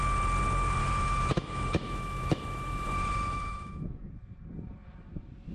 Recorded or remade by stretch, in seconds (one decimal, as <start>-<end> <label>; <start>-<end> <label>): 0.0-0.8 recorded; 0.8-4.1 remade; 4.1-5.5 recorded

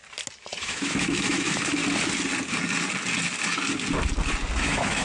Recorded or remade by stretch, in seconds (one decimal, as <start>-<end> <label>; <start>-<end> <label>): 0.0-0.6 recorded; 0.6-1.8 remade; 1.8-4.6 recorded; 4.6-5.0 remade

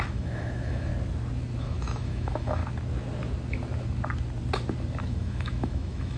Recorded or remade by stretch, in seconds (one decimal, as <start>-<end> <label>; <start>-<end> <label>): 0.0-0.9 remade; 0.9-1.6 recorded; 1.6-2.6 remade; 2.6-5.0 recorded; 5.0-6.2 remade